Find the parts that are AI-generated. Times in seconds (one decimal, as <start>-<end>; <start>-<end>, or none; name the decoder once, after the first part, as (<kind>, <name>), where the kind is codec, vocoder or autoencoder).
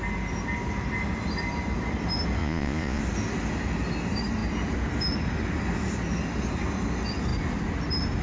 2.4-3.0 (vocoder, Vocos)